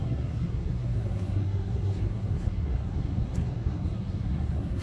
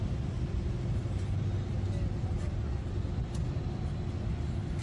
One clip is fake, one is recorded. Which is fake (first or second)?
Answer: first